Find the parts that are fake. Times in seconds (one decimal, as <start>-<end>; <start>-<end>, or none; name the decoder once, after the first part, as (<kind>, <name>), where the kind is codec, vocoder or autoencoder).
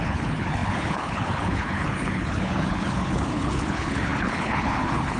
0.0-5.2 (codec, HILCodec)